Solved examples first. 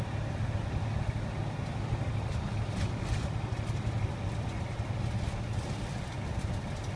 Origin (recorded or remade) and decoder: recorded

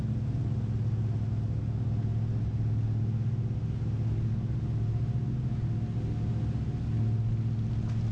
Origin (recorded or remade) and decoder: recorded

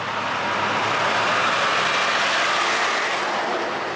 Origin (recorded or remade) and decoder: recorded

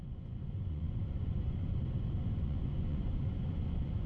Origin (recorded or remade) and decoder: remade, vocoder, Vocos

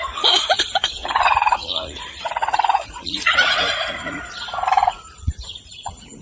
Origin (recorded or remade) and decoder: remade, vocoder, Vocos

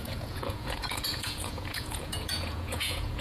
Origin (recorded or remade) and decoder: remade, vocoder, Vocos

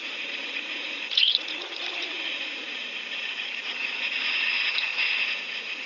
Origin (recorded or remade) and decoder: remade, vocoder, Vocos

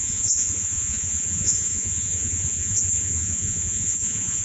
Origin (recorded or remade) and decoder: remade, vocoder, Vocos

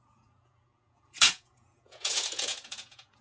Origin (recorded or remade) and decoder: remade, vocoder, Vocos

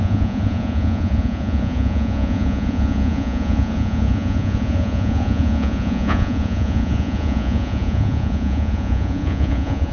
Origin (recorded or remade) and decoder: remade, vocoder, Vocos